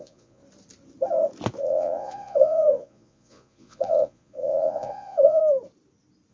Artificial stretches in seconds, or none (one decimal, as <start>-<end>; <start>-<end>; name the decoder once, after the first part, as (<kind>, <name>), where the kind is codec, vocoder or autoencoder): 0.0-0.4 (vocoder, Vocos); 1.6-5.4